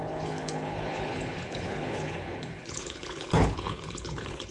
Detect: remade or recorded remade